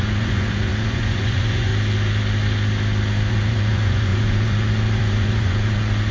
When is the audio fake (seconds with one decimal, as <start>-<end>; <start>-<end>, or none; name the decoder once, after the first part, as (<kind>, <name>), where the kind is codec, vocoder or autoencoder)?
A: 0.0-1.7 (vocoder, Vocos); 3.3-6.1